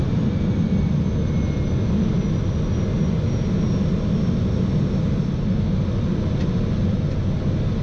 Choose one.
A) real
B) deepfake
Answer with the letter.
A